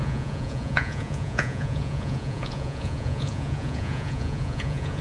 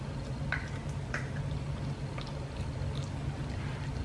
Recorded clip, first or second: second